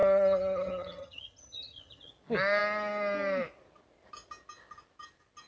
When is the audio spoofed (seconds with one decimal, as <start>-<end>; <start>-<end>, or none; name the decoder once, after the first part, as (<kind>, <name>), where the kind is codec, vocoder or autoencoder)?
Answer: 0.0-2.1 (vocoder, HiFi-GAN)